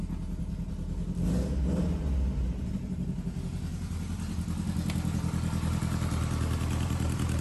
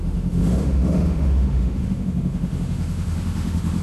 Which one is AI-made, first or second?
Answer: second